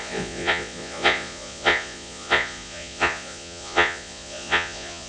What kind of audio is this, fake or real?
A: fake